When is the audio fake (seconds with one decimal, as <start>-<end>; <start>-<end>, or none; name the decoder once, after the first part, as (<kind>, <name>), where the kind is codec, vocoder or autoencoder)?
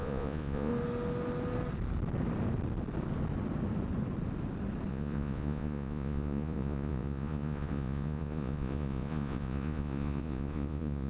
0.0-0.7 (vocoder, Vocos); 4.9-11.1